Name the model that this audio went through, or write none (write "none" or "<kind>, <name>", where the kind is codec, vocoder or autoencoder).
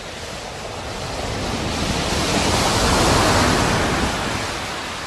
none